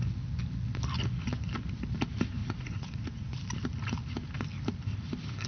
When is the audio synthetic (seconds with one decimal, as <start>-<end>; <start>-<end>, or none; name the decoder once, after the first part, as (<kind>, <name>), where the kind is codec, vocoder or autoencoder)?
2.4-3.3 (vocoder, Vocos)